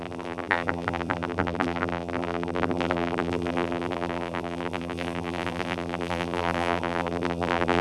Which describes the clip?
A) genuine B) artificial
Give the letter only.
B